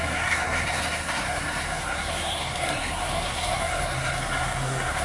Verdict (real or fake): fake